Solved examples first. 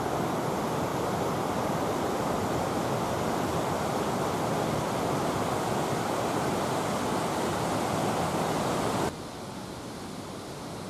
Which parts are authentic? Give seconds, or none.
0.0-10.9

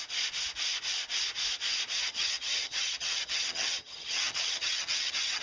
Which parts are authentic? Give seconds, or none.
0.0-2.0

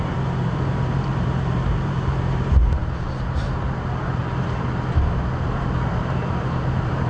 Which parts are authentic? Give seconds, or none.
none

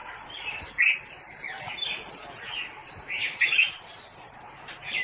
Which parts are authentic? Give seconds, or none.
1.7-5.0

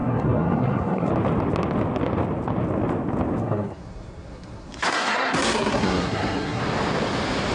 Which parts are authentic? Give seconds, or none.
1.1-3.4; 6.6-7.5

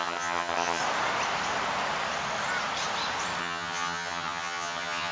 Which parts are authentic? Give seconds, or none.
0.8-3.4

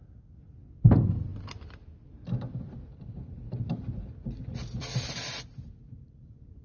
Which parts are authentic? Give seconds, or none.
0.0-6.6